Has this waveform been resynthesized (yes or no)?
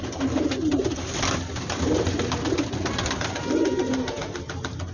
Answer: no